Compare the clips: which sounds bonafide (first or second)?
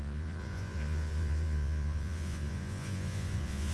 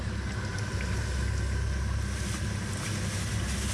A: second